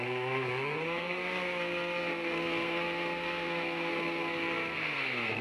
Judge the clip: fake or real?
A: fake